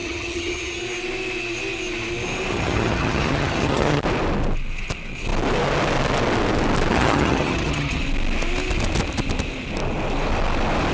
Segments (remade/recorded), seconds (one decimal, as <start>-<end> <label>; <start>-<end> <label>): 0.0-0.8 remade; 0.8-2.5 recorded; 2.5-4.0 remade; 4.0-6.9 recorded; 6.9-8.0 remade; 8.0-10.9 recorded